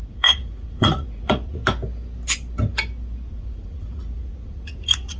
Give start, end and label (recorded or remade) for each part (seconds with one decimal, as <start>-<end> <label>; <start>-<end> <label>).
0.0-1.6 remade; 1.6-3.3 recorded; 3.3-5.2 remade